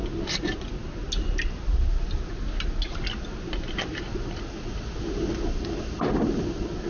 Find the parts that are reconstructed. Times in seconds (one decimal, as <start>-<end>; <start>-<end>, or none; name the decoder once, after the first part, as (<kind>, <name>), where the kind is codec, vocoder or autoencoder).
none